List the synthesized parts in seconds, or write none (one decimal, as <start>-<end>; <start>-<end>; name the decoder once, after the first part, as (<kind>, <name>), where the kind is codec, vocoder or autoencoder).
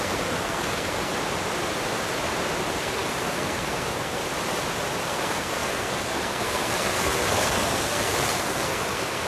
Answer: 0.0-1.1 (codec, SNAC); 2.7-4.2; 5.0-9.3